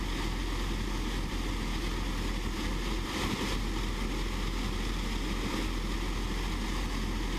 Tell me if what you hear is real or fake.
real